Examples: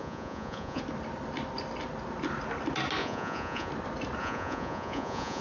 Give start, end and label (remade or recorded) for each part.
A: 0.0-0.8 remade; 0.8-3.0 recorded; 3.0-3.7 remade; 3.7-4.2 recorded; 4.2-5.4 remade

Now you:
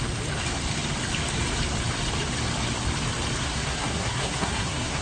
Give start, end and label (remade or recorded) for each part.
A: 0.0-3.4 recorded; 3.4-5.0 remade

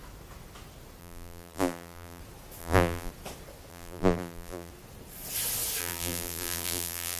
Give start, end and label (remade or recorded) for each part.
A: 0.0-1.0 recorded; 1.0-2.2 remade; 2.2-2.6 recorded; 2.6-3.1 remade; 3.1-3.7 recorded; 3.7-4.7 remade; 4.7-5.8 recorded; 5.8-7.2 remade

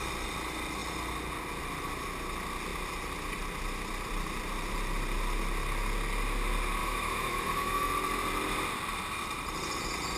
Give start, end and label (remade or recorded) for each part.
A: 0.0-6.8 recorded; 6.8-7.9 remade; 7.9-10.2 recorded

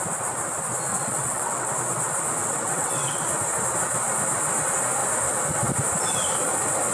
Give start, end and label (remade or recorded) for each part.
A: 0.0-0.9 recorded; 0.9-1.7 remade; 1.7-2.4 recorded; 2.4-3.2 remade; 3.2-6.9 recorded